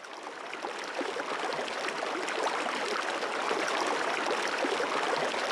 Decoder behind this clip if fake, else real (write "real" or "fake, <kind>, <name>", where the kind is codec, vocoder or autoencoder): real